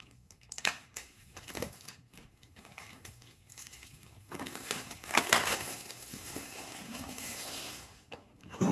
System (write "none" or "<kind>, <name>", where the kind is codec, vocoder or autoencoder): codec, SNAC